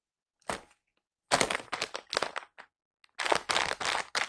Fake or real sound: real